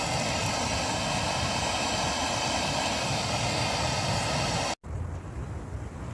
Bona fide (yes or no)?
yes